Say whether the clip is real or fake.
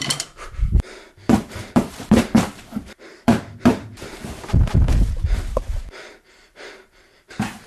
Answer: fake